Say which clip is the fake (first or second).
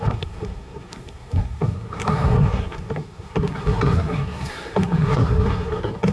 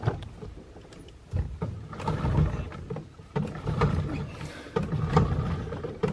first